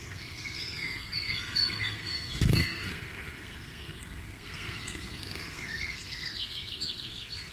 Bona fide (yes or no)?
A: no